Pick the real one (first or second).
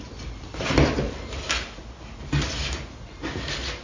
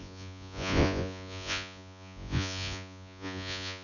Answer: first